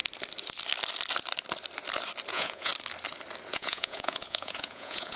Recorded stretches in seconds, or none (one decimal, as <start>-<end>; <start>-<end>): 0.0-2.3; 2.7-3.5